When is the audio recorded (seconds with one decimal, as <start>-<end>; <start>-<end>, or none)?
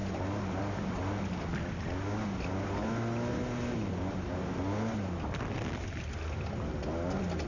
0.0-7.5